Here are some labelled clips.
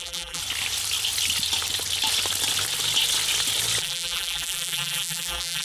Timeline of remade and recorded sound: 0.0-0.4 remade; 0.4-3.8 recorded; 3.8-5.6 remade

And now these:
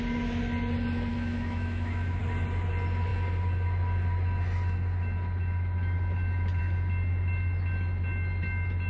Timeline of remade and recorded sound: 0.0-1.1 recorded; 1.1-2.2 remade; 2.2-8.9 recorded

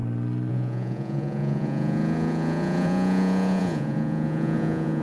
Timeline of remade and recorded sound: 0.0-0.5 recorded; 0.5-5.0 remade